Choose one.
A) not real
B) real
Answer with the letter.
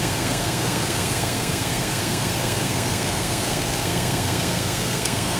A